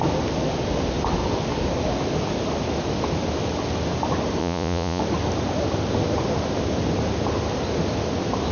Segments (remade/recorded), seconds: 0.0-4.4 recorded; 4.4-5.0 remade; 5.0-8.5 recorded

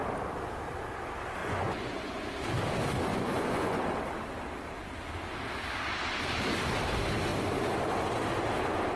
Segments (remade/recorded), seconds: 0.0-1.4 recorded; 1.4-2.3 remade; 2.3-3.1 recorded; 3.1-3.8 remade; 3.8-9.0 recorded